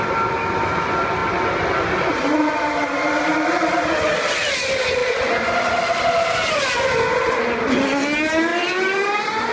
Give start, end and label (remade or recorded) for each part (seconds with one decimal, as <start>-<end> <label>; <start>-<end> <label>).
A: 0.0-9.5 recorded

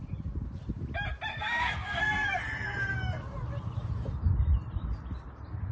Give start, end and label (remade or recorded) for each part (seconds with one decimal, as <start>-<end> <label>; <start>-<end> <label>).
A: 0.0-1.3 recorded; 1.3-2.4 remade; 2.4-5.7 recorded

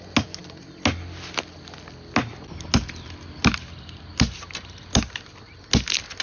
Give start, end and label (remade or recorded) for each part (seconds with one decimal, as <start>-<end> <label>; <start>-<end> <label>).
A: 0.0-6.2 recorded